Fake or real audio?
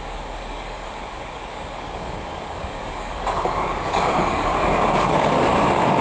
fake